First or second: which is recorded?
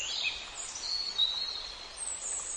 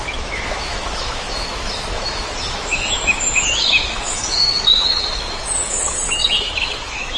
first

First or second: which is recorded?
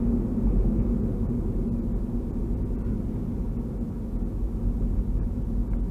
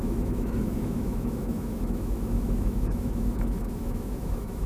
first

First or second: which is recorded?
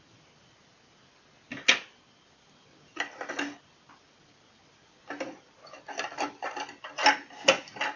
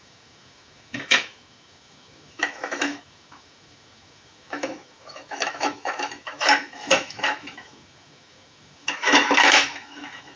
first